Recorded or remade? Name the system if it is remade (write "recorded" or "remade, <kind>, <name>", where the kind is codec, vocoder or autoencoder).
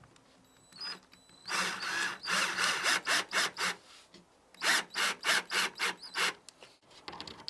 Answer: recorded